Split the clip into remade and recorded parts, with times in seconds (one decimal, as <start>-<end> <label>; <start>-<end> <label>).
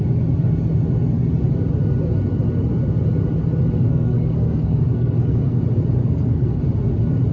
0.0-3.9 recorded; 3.9-5.6 remade; 5.6-6.0 recorded; 6.0-6.6 remade; 6.6-7.3 recorded